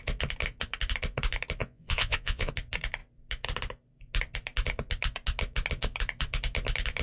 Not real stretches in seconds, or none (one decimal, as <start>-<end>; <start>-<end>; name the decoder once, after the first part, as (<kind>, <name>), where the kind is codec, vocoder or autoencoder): 1.6-2.5 (vocoder, Vocos)